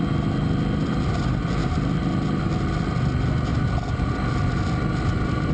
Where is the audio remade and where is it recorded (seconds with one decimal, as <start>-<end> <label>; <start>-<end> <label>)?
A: 0.0-5.5 recorded